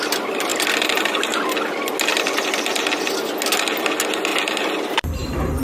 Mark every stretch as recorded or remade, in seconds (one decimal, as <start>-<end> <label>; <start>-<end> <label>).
0.0-0.5 recorded; 0.5-1.6 remade; 1.6-4.3 recorded; 4.3-5.6 remade